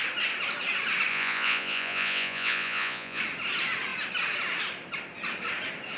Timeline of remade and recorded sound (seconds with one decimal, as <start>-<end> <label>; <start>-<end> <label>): 0.0-1.1 recorded; 1.1-3.2 remade; 3.2-6.0 recorded